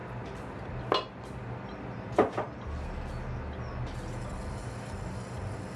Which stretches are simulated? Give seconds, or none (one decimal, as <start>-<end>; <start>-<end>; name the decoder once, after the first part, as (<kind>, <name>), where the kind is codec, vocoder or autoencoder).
none